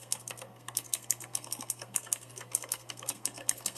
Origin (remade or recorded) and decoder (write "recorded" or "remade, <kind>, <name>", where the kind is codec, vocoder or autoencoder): remade, codec, SNAC